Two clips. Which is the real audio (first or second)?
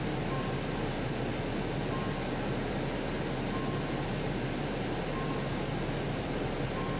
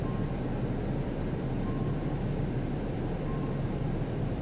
first